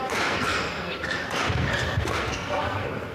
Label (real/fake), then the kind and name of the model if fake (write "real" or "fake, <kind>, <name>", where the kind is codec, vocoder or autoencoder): fake, codec, SNAC